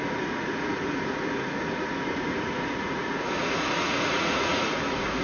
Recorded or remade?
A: remade